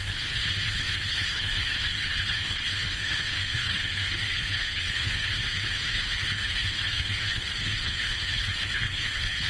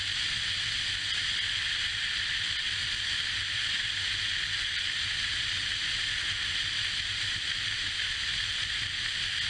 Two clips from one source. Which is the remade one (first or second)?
first